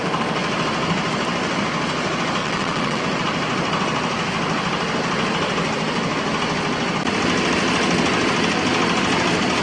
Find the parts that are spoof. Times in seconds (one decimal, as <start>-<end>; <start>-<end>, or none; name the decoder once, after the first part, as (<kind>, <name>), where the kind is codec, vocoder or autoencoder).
2.4-3.0 (vocoder, WaveNeXt)